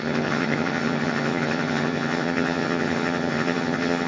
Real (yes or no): no